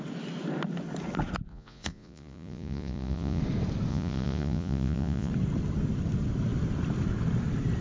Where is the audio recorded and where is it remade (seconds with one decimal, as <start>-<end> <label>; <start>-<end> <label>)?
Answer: 0.0-1.5 recorded; 1.5-3.4 remade; 3.4-3.9 recorded; 3.9-5.3 remade; 5.3-7.8 recorded